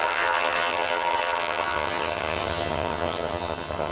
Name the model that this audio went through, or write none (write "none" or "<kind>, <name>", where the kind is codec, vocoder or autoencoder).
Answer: vocoder, HiFi-GAN